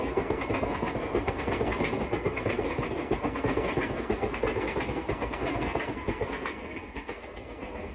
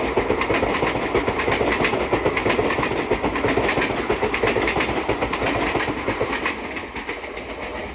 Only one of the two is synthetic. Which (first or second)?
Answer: first